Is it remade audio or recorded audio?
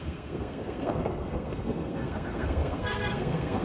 remade